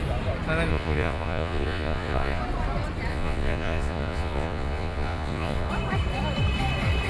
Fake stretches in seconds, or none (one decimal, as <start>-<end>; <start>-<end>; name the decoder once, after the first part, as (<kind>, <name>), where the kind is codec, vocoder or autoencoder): 0.7-2.4 (vocoder, Vocos); 3.1-5.7